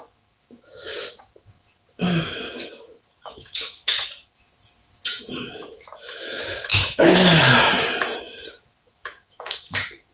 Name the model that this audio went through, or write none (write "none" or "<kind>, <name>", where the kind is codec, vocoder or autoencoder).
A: autoencoder, DAC-VAE